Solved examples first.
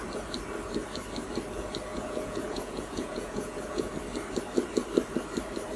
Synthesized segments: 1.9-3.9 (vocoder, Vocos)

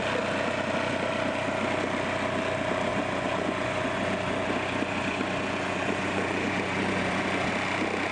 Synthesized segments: 2.9-7.5 (vocoder, Vocos)